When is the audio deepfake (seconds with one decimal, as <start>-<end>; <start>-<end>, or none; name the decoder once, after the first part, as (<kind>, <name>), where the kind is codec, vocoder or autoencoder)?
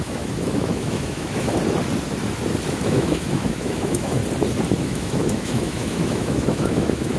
0.0-1.5 (autoencoder, DAC-VAE); 2.7-4.2; 4.8-7.2